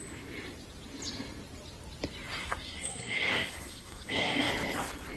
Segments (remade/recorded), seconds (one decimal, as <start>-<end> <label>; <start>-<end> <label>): 0.0-2.4 recorded; 2.4-4.5 remade; 4.5-5.2 recorded